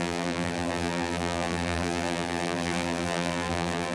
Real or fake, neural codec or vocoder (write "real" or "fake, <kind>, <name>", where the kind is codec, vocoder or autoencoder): fake, vocoder, BigVGAN v2